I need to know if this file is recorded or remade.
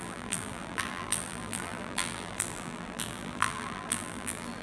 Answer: remade